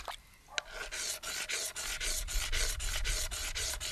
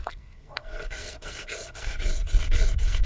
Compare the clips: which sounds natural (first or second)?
first